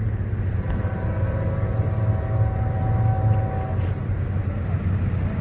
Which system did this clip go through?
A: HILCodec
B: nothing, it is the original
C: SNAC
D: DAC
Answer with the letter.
B